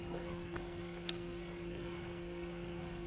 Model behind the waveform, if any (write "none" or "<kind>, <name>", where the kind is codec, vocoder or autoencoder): codec, SNAC